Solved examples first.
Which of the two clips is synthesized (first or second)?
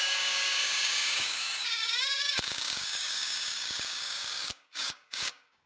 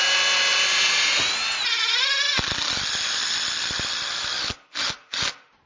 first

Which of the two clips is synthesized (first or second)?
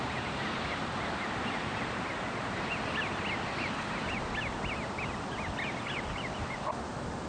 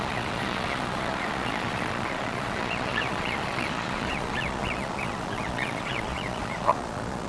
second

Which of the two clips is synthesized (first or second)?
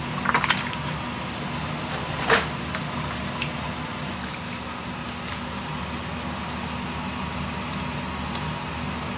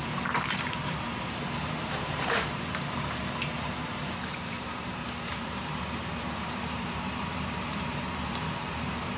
second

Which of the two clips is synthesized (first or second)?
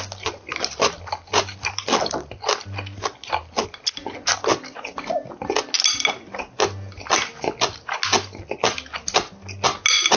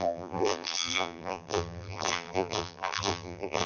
second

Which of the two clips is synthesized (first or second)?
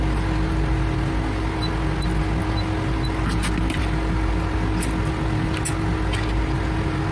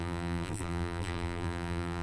second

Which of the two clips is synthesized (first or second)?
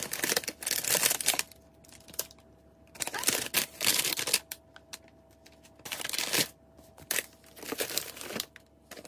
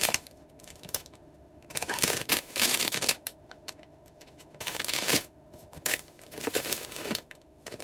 second